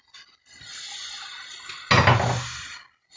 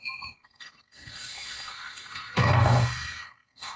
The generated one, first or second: second